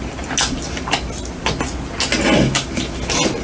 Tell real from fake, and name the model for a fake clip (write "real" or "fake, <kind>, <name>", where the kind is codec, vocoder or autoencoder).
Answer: real